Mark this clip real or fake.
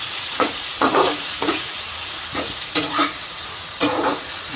fake